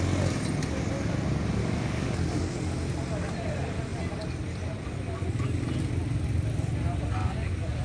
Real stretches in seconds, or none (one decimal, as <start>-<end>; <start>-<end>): 0.0-1.6; 2.4-7.2